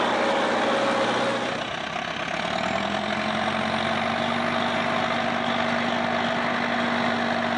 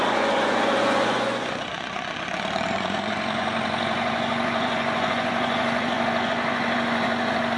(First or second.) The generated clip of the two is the second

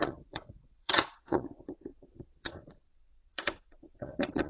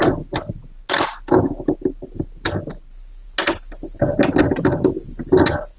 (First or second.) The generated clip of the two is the first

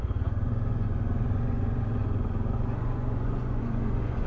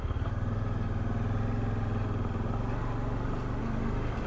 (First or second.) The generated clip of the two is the first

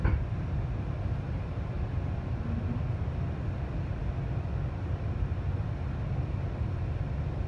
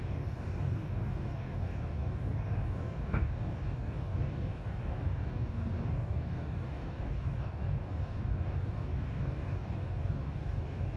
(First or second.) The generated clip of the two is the second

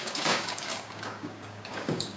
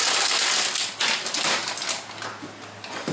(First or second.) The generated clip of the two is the first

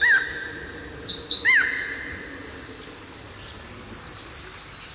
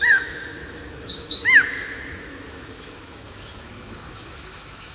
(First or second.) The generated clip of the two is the second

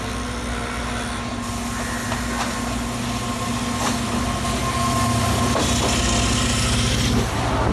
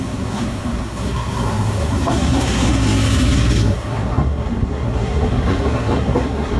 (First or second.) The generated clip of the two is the second